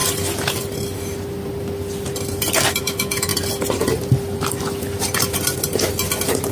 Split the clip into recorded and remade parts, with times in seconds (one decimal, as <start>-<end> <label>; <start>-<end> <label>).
0.0-2.8 recorded; 2.8-3.3 remade; 3.3-6.5 recorded

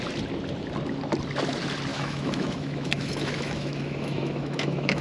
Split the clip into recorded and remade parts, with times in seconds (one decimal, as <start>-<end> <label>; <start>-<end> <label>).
0.0-1.9 recorded; 1.9-5.0 remade

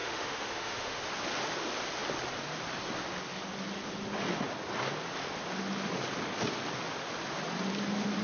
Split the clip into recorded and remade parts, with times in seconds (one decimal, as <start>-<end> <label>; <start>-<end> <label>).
0.0-1.0 remade; 1.0-8.2 recorded

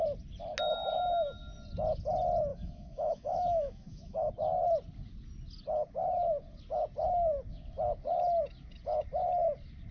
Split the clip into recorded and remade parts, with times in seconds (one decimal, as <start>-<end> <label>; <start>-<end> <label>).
0.0-2.5 recorded; 2.5-4.3 remade; 4.3-9.9 recorded

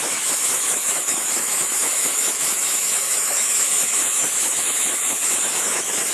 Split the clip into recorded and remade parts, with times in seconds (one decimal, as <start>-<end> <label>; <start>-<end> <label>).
0.0-6.1 remade